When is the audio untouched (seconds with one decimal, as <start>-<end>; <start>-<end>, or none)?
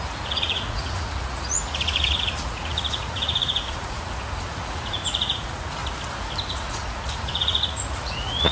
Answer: 5.8-6.5